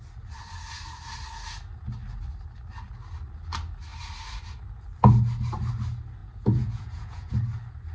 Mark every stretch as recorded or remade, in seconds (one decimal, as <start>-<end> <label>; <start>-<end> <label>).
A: 0.0-6.2 recorded; 6.2-7.3 remade; 7.3-7.9 recorded